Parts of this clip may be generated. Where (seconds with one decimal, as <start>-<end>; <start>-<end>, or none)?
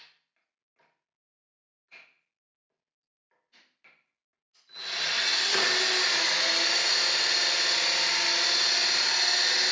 none